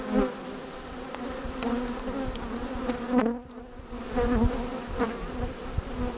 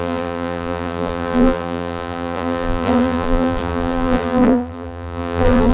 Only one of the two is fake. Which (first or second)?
second